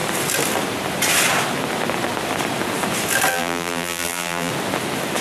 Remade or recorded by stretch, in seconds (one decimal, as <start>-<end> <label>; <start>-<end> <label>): 0.0-3.3 recorded; 3.3-4.5 remade; 4.5-5.2 recorded